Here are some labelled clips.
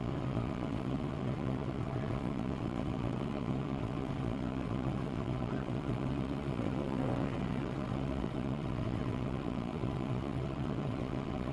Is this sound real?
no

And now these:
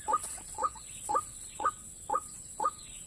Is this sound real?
no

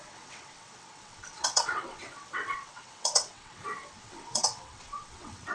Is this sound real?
no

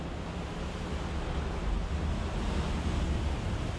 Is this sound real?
yes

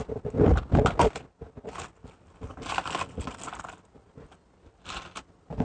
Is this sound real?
yes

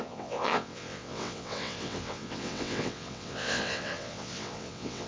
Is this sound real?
no